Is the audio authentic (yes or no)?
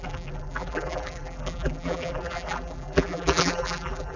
no